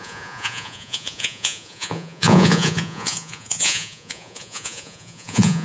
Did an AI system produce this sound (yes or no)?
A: yes